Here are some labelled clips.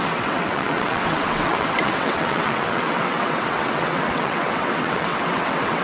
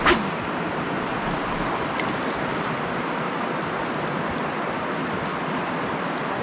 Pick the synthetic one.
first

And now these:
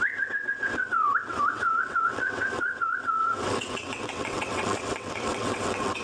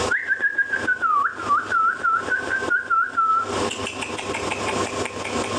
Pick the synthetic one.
first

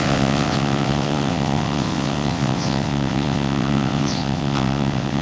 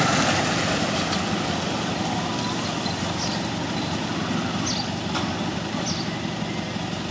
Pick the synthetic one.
first